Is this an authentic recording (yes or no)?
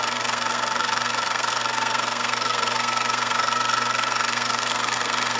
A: no